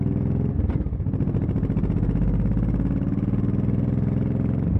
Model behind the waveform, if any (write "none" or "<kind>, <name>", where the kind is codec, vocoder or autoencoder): none